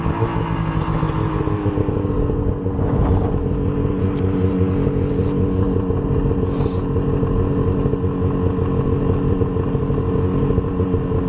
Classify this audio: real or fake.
real